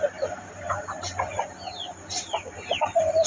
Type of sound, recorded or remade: recorded